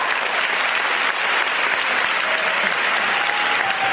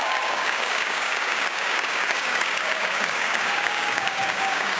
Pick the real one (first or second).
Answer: first